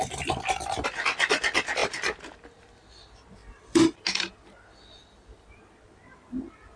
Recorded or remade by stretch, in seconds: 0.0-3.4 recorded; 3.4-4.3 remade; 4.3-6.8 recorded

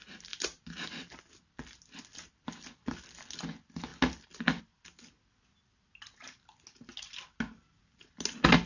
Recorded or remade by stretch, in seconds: 0.0-8.7 recorded

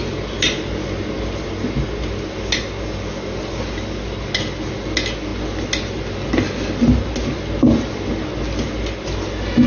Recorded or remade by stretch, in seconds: 0.0-9.7 recorded

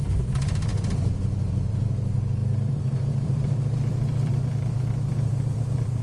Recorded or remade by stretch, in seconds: 0.0-0.7 remade; 0.7-1.5 recorded; 1.5-6.0 remade

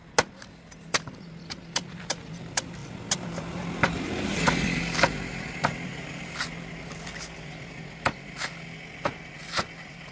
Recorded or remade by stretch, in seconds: 0.0-0.9 recorded; 0.9-2.8 remade; 2.8-4.0 recorded; 4.0-5.9 remade; 5.9-10.1 recorded